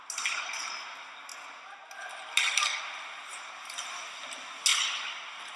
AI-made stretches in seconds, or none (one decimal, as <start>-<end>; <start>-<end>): none